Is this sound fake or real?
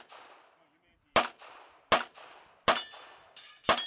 real